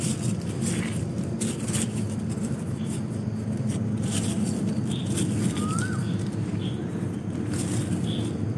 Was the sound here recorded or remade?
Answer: recorded